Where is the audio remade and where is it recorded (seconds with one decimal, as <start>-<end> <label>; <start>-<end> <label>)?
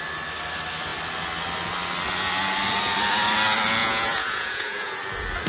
0.0-3.8 recorded; 3.8-5.0 remade; 5.0-5.5 recorded